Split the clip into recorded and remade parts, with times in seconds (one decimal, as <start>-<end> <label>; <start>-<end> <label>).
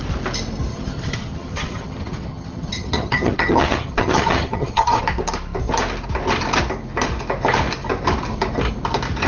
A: 0.0-0.7 recorded; 0.7-5.0 remade; 5.0-9.3 recorded